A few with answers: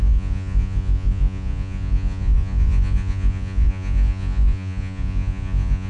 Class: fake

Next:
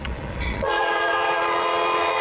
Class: fake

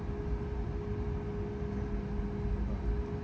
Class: real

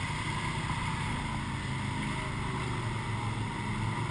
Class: real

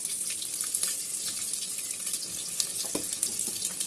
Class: real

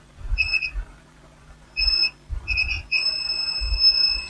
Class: fake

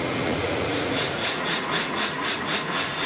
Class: fake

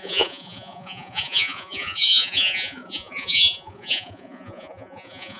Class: fake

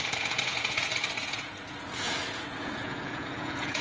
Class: fake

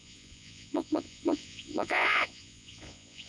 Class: fake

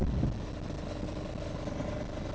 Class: real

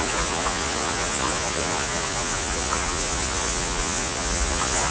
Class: fake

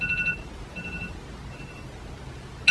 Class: real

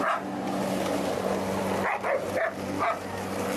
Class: real